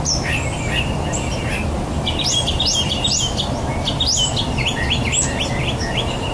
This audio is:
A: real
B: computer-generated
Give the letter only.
A